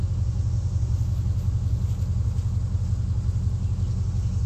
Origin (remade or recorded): recorded